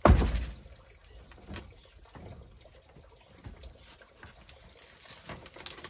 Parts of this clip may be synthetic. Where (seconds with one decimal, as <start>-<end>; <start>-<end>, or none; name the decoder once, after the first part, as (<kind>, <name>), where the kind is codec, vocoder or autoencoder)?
none